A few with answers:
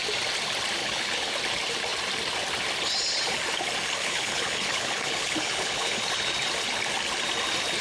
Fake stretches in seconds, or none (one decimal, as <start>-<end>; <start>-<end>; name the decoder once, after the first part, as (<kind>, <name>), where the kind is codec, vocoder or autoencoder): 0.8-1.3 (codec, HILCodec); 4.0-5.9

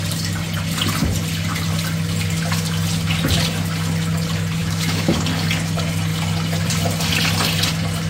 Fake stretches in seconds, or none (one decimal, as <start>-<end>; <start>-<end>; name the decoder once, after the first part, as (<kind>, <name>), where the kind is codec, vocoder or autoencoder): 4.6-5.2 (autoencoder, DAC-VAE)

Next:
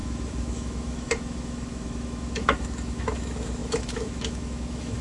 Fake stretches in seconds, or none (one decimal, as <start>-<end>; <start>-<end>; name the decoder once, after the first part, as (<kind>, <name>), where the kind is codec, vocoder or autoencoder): 0.0-5.0 (autoencoder, DAC-VAE)

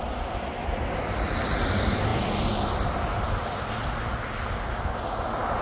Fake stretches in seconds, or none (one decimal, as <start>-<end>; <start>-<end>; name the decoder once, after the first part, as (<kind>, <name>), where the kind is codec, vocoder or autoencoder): none